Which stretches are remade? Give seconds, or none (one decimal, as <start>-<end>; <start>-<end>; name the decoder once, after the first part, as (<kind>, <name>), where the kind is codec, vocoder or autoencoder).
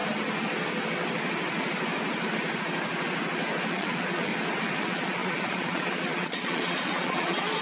3.7-4.3 (vocoder, Vocos); 4.8-7.6